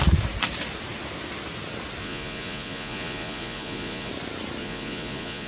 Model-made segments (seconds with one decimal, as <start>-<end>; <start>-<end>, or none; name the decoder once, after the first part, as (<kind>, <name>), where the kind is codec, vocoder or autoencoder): 2.0-4.1 (vocoder, Vocos); 4.6-5.5